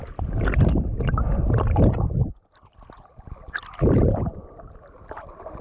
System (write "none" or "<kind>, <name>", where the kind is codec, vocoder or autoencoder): none